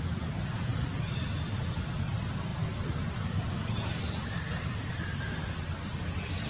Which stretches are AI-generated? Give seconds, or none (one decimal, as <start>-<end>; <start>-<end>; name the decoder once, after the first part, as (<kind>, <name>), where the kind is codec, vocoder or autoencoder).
0.7-1.3 (vocoder, BigVGAN v2); 2.5-6.5